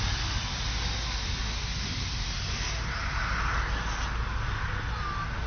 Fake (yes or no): no